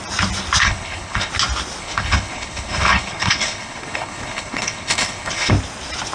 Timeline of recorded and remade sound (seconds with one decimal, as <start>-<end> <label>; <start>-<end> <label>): 0.0-0.6 recorded; 0.6-1.3 remade; 1.3-1.8 recorded; 1.8-5.5 remade; 5.5-6.1 recorded